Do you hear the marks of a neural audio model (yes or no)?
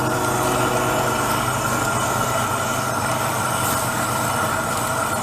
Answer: no